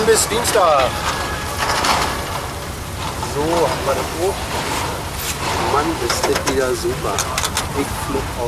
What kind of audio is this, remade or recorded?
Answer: recorded